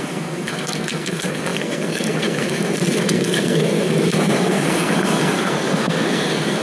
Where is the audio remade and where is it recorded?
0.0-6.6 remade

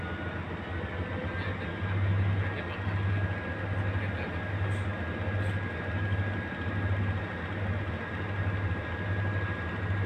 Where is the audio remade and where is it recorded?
0.0-10.1 recorded

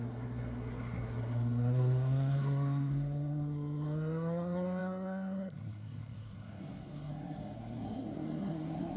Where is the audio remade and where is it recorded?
0.0-9.0 remade

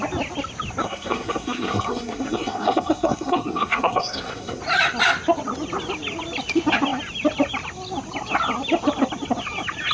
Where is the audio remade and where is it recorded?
0.0-0.8 recorded; 0.8-4.6 remade; 4.6-9.9 recorded

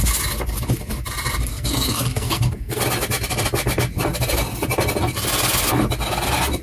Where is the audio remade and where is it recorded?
0.0-1.5 recorded; 1.5-2.8 remade; 2.8-6.6 recorded